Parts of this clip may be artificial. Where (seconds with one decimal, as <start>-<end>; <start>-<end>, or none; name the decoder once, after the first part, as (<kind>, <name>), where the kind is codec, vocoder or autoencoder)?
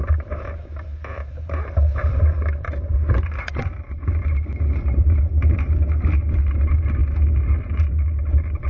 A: 0.0-7.0 (vocoder, BigVGAN v2); 7.6-8.7